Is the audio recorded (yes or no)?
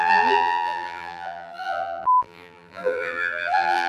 no